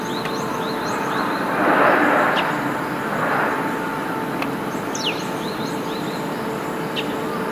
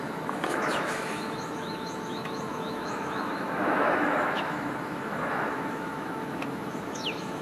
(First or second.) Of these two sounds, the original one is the first